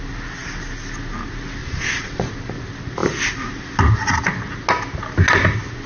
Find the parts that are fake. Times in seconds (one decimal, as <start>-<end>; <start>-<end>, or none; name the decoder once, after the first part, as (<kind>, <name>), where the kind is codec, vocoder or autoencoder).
1.6-2.3 (vocoder, Vocos)

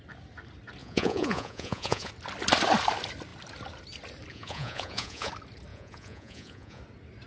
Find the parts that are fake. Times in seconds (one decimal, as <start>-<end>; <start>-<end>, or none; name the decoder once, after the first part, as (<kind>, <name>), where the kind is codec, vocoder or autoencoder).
0.8-2.1 (vocoder, Vocos); 4.3-5.3; 5.7-6.8